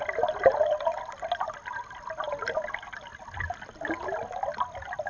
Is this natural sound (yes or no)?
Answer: yes